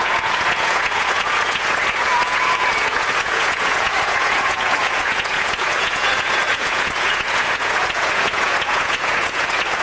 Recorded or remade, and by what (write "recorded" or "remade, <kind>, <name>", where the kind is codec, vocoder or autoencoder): remade, vocoder, Vocos